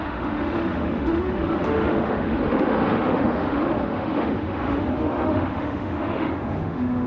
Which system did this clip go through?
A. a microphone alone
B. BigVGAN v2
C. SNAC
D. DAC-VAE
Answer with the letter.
D